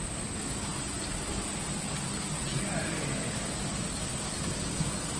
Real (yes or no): yes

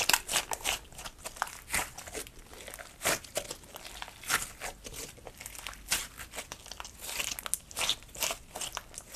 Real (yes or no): yes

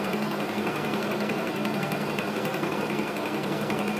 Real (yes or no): no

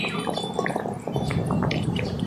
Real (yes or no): yes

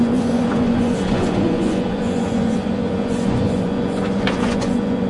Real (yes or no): no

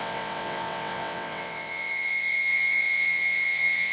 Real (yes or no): no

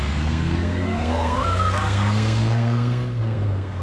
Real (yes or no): no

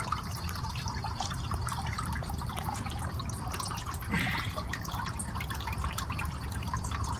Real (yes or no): no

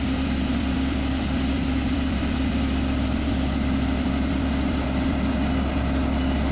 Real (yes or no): no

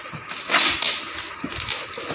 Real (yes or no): yes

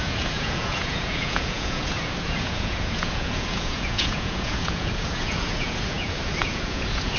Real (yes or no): no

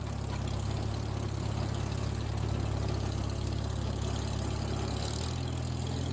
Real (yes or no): yes